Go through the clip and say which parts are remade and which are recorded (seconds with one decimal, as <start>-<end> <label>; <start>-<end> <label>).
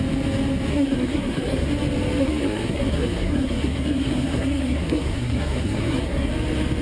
0.0-0.7 recorded; 0.7-1.7 remade; 1.7-2.2 recorded; 2.2-6.3 remade; 6.3-6.8 recorded